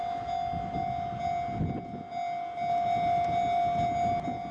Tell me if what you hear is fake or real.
real